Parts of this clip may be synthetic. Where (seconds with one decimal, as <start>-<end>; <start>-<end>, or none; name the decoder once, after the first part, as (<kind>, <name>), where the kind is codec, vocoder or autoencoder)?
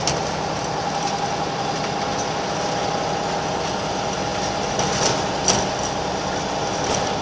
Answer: none